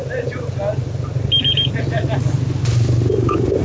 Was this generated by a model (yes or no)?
no